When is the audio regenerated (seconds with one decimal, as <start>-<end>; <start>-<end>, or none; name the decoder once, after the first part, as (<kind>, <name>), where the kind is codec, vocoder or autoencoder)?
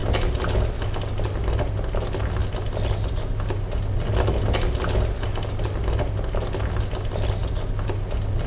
none